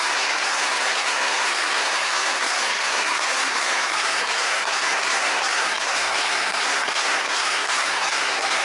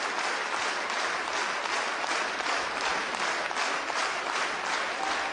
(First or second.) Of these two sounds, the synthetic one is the first